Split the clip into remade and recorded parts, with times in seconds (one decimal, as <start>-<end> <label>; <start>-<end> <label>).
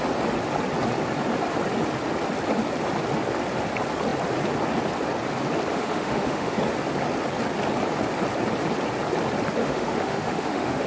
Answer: 0.0-5.7 recorded; 5.7-6.6 remade; 6.6-9.6 recorded; 9.6-10.9 remade